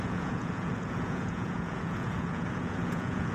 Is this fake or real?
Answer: fake